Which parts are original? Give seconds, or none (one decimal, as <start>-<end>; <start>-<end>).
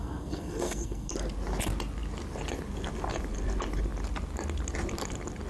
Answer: 1.1-5.5